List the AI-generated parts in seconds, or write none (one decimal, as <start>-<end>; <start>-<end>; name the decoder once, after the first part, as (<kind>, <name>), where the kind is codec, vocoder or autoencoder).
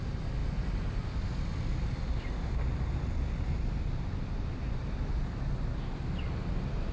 none